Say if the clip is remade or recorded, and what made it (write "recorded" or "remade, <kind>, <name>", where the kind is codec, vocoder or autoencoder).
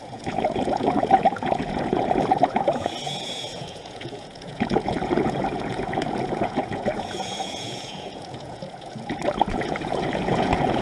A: remade, vocoder, Vocos